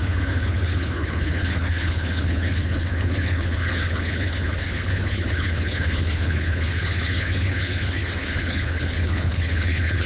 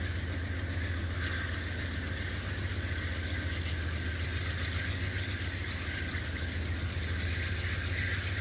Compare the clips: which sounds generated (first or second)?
first